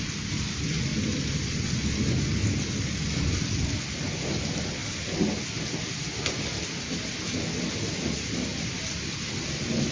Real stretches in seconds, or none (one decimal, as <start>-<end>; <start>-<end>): 0.0-9.9

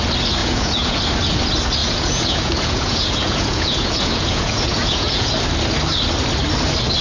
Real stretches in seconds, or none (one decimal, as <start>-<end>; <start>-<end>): 0.0-0.4; 1.0-1.8; 5.3-7.0

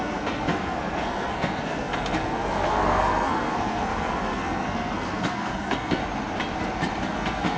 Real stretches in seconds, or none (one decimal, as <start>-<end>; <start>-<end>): 6.0-7.1

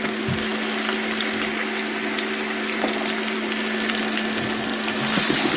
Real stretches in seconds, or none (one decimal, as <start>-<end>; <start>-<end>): 0.0-5.6

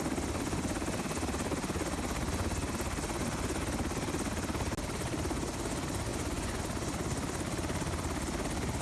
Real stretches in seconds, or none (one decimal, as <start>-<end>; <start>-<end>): 0.0-6.1; 6.6-8.8

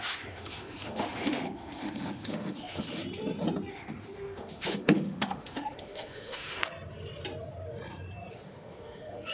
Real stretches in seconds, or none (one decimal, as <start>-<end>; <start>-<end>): 3.0-3.7; 6.6-8.3

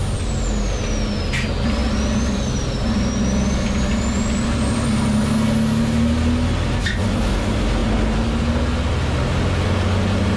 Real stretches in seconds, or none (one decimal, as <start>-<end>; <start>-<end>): 0.0-10.4

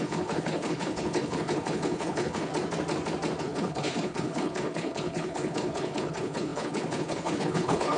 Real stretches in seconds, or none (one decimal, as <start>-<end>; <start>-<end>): 2.5-3.4